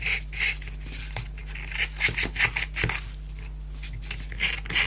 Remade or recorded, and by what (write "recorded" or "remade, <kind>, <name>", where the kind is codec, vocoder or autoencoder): recorded